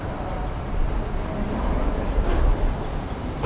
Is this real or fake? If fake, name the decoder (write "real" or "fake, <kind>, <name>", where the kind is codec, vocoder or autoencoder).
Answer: real